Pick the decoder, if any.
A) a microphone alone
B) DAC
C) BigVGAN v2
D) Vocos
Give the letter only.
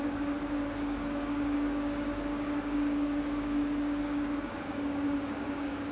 B